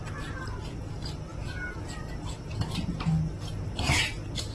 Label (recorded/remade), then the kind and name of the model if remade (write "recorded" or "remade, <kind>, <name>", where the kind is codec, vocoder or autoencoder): recorded